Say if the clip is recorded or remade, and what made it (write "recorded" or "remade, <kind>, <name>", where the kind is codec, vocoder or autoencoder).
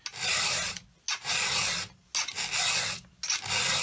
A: recorded